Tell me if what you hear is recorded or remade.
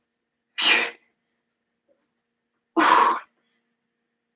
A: recorded